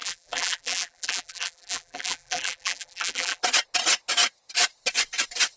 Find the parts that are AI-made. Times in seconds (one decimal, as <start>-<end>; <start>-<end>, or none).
0.0-3.4